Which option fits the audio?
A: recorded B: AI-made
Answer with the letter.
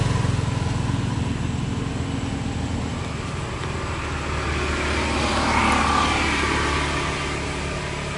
A